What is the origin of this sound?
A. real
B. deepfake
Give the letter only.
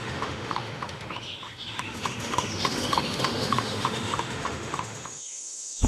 B